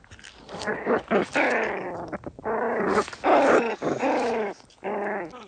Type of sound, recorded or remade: remade